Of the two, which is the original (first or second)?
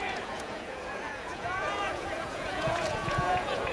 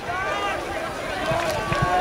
second